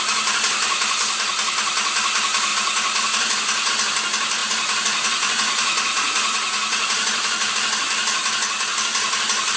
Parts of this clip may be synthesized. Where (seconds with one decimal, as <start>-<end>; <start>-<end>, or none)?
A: 2.5-3.7; 4.4-7.5